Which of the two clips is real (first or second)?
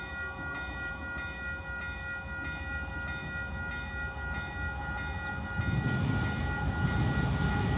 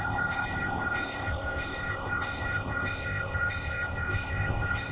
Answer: first